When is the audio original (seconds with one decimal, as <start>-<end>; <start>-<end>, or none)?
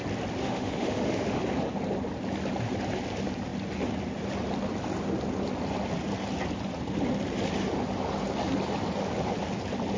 0.0-0.4; 1.4-10.0